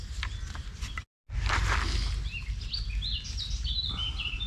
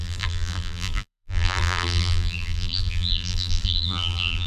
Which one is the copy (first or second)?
second